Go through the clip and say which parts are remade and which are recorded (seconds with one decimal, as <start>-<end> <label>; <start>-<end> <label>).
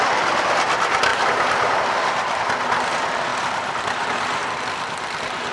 0.0-1.1 recorded; 1.1-1.8 remade; 1.8-3.3 recorded; 3.3-5.5 remade